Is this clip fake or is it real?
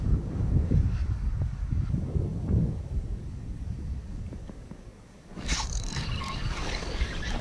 fake